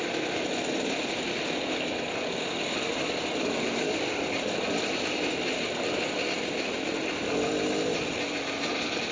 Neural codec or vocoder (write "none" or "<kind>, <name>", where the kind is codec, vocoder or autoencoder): none